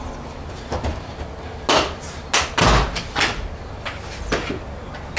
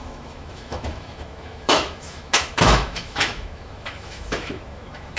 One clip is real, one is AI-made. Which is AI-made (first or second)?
second